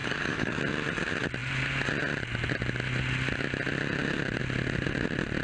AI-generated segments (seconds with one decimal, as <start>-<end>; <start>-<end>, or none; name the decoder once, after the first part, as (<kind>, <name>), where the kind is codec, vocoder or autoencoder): 0.0-0.6 (codec, DAC)

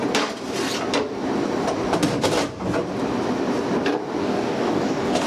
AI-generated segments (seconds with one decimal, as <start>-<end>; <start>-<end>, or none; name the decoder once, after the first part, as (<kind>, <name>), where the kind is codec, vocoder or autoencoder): 4.2-5.3 (codec, DAC)

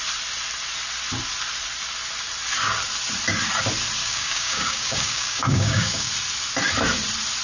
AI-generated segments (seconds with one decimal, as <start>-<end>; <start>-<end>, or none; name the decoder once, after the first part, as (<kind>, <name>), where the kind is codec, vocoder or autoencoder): 4.0-6.1 (codec, DAC)

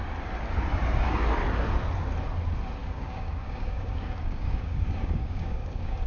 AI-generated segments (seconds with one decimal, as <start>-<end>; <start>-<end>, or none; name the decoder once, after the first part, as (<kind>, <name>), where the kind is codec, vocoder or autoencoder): 2.8-6.1 (codec, DAC)